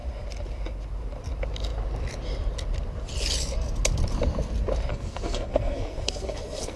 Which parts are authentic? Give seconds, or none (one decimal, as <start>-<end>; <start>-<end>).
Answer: 0.0-4.9